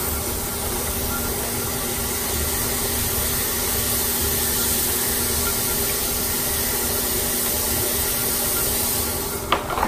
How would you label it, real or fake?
real